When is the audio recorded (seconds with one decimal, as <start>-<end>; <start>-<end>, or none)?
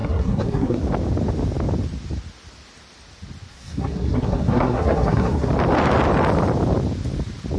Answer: 0.8-3.5; 5.5-7.6